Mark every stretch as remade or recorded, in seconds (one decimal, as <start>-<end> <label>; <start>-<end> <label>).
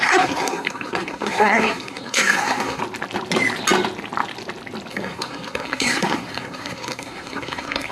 0.0-2.8 remade; 2.8-4.9 recorded; 4.9-7.9 remade